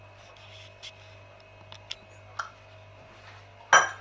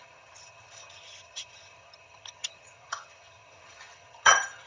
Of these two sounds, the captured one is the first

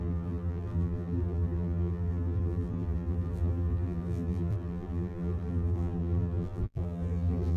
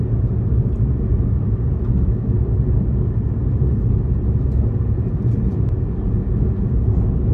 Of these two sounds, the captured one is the second